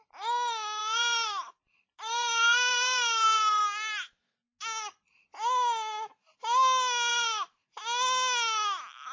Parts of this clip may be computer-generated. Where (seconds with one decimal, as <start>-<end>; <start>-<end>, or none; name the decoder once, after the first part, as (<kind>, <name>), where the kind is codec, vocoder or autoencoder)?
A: 0.8-3.6 (vocoder, BigVGAN v2); 7.1-7.6